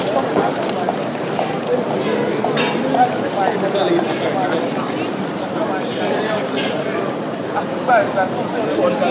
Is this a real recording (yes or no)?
yes